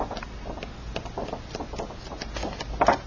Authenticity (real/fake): real